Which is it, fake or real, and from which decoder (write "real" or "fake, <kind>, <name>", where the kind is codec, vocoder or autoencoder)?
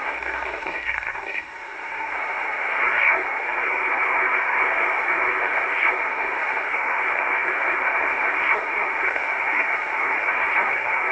fake, codec, SNAC